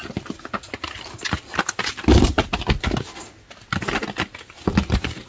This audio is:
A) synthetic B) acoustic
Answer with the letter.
B